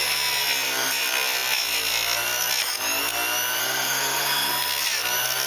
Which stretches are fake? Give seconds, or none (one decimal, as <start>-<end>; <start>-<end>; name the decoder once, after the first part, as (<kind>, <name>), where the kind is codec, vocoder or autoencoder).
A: 3.6-4.5 (codec, SNAC)